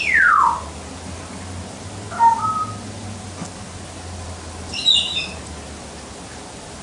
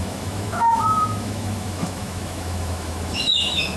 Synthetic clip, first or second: second